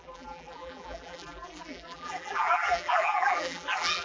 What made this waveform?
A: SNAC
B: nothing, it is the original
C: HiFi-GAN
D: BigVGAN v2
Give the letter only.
D